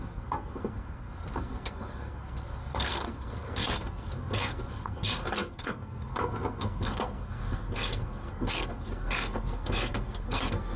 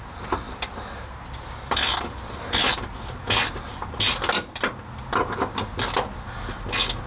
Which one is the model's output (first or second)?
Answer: first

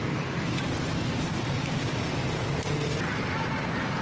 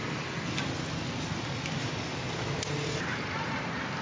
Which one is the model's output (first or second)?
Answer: first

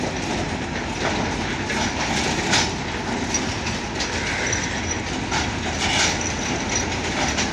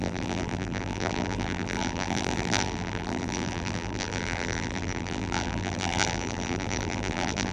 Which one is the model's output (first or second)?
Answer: second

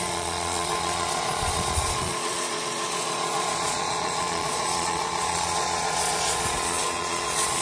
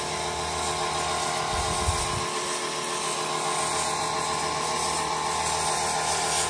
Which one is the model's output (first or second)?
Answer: first